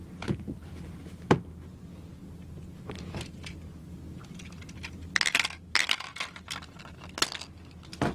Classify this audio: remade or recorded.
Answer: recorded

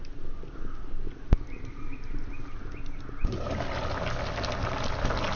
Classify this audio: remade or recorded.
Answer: recorded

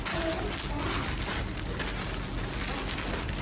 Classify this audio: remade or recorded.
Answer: recorded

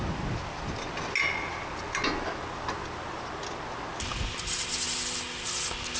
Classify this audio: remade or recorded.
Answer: recorded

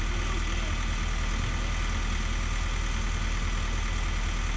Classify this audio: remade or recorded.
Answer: recorded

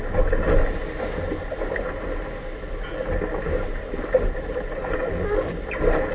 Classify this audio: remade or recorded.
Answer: recorded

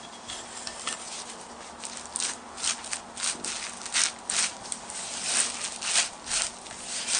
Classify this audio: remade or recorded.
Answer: recorded